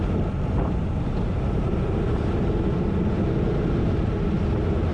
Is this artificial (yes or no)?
no